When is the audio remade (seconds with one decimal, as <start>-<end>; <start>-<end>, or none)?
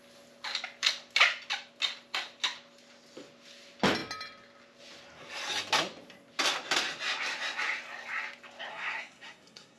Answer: 8.7-9.8